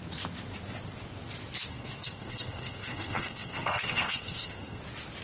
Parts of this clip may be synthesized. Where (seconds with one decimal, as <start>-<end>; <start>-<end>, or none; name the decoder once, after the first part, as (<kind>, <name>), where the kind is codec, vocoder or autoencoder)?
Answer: 1.7-4.8 (codec, SNAC)